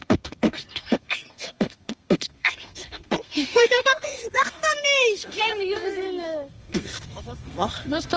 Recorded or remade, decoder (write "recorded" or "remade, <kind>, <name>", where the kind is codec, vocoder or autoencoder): remade, codec, SNAC